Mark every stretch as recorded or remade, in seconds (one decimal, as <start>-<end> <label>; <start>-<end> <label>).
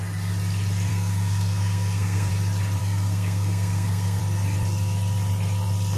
0.0-0.9 recorded; 0.9-2.3 remade; 2.3-2.8 recorded; 2.8-4.2 remade; 4.2-6.0 recorded